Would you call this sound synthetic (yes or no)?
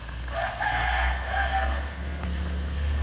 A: yes